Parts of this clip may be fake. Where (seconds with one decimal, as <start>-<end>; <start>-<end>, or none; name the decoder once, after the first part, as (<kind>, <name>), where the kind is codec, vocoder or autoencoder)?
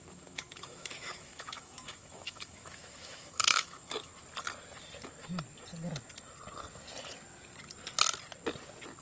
0.0-4.1 (autoencoder, DAC-VAE)